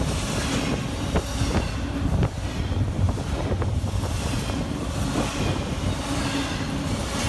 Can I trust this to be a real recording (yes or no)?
yes